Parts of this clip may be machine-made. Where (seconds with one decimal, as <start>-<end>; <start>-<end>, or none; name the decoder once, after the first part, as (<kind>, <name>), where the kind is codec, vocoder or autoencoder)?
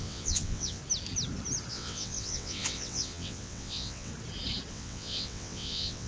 0.0-0.8 (vocoder, WaveNeXt); 1.7-4.1; 4.7-6.1